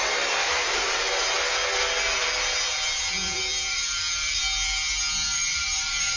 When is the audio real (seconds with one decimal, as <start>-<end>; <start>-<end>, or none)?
0.0-0.4; 1.1-3.7; 4.4-5.3